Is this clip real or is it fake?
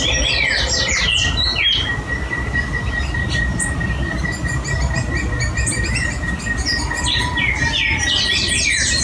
real